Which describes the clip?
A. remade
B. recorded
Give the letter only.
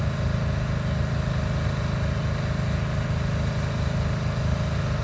B